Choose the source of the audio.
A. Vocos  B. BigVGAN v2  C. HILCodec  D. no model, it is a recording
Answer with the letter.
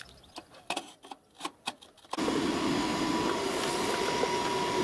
D